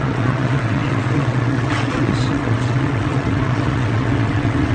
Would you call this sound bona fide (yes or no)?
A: no